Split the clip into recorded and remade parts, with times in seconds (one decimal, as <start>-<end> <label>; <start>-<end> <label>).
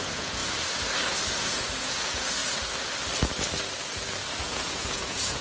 0.0-0.4 remade; 0.4-1.4 recorded; 1.4-2.4 remade; 2.4-4.4 recorded; 4.4-5.4 remade